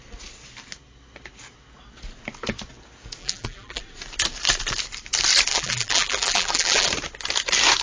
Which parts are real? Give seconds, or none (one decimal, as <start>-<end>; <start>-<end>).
0.0-3.2; 3.8-5.5; 6.9-7.8